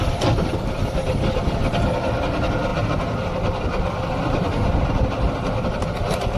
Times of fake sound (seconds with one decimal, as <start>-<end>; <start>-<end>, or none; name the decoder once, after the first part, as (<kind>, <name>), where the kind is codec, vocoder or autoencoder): none